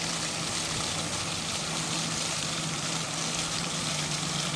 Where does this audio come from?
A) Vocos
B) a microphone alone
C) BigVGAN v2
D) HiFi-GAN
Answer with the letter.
C